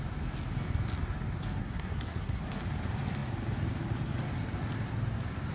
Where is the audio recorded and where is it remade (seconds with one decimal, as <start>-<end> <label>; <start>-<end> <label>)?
0.0-1.6 recorded; 1.6-2.4 remade; 2.4-5.5 recorded